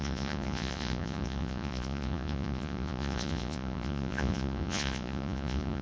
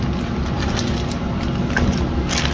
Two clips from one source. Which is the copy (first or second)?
first